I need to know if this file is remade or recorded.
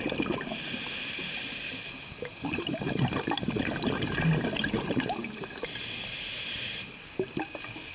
recorded